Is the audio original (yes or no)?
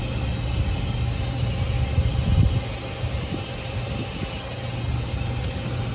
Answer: yes